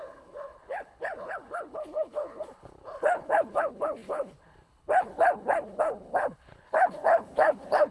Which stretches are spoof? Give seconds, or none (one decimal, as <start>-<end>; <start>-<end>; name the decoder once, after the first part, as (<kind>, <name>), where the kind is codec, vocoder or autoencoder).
0.0-7.9 (codec, HILCodec)